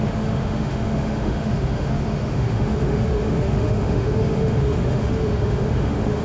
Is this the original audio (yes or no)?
no